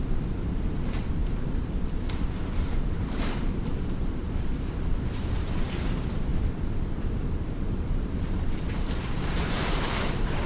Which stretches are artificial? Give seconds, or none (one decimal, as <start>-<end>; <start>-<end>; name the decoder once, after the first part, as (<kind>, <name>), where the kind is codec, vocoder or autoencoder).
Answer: 0.0-10.5 (vocoder, BigVGAN v2)